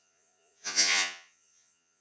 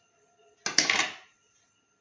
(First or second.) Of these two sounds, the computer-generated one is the first